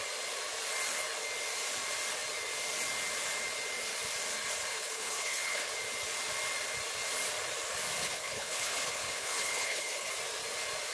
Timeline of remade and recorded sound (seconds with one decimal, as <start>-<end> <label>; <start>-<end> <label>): 0.0-4.7 recorded; 4.7-5.7 remade; 5.7-8.0 recorded; 8.0-10.1 remade; 10.1-10.9 recorded